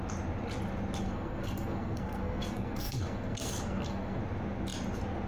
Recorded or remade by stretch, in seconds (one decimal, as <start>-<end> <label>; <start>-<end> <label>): 0.0-1.0 recorded; 1.0-4.2 remade; 4.2-5.3 recorded